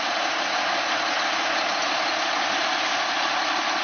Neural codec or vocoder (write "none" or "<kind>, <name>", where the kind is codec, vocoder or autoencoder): none